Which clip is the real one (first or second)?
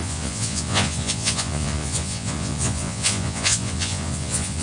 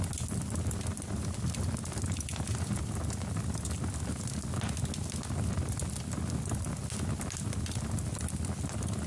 second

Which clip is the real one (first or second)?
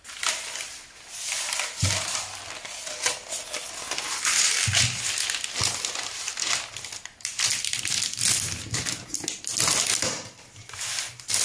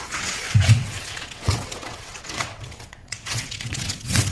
first